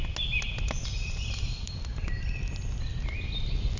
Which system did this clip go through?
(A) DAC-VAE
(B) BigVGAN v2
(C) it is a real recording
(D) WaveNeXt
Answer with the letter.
C